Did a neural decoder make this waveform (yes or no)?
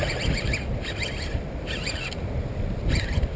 no